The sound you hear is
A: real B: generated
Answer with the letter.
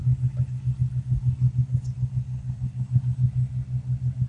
A